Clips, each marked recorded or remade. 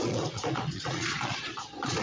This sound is remade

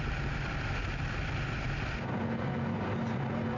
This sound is recorded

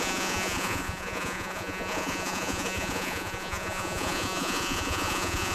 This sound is remade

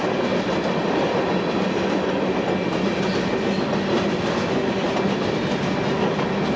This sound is recorded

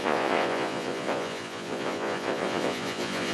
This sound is remade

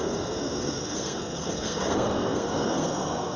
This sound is remade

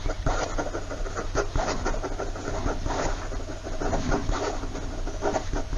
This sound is recorded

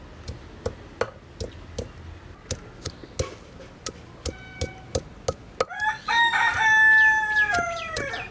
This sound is recorded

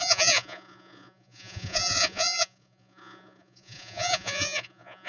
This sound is remade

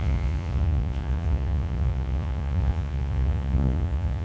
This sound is remade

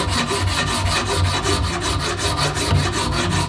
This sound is recorded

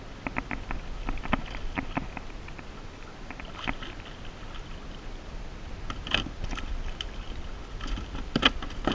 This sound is recorded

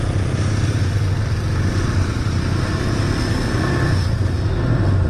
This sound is recorded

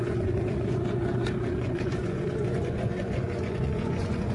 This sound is remade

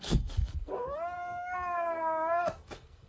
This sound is remade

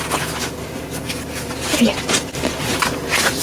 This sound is recorded